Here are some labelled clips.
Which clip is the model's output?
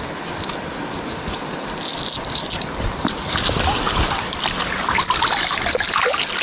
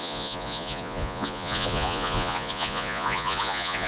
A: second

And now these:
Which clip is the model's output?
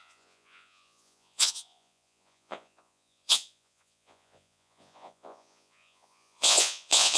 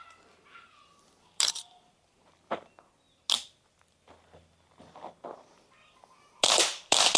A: first